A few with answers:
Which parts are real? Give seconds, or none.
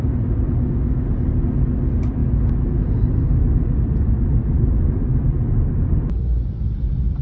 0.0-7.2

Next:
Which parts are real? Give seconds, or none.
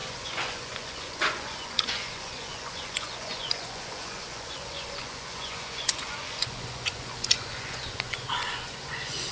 none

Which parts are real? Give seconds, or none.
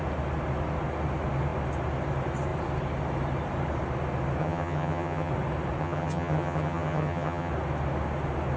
0.0-4.4; 5.3-5.8; 7.5-8.6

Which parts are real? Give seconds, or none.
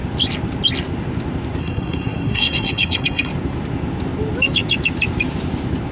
0.0-1.6; 3.3-5.9